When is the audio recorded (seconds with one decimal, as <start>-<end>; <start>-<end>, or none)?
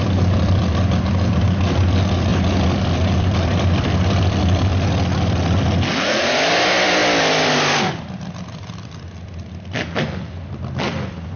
4.7-6.5